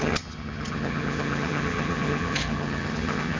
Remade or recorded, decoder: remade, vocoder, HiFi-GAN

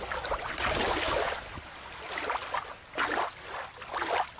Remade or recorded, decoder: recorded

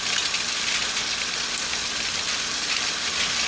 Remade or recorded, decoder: recorded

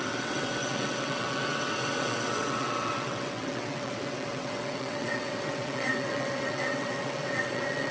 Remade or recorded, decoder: remade, vocoder, WaveNeXt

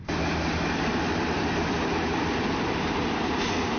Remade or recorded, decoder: recorded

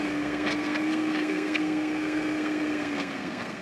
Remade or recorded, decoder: remade, codec, SNAC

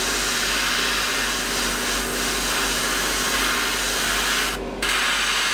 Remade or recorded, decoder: recorded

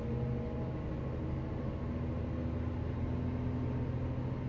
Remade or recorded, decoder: recorded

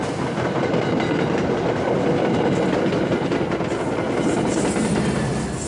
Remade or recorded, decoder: recorded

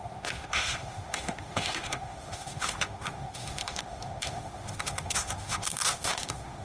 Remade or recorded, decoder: remade, autoencoder, DAC-VAE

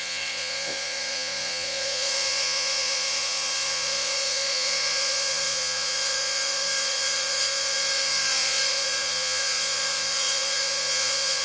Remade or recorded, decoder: remade, vocoder, Vocos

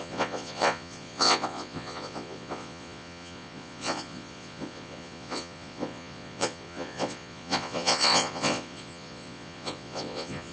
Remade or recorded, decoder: remade, vocoder, Vocos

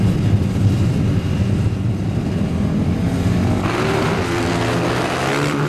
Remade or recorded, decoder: recorded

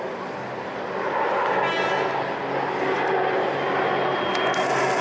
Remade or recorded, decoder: recorded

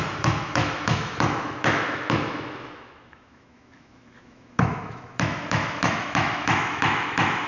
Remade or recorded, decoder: remade, autoencoder, DAC-VAE